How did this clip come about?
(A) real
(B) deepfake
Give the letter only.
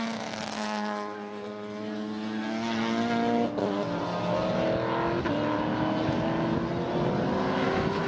A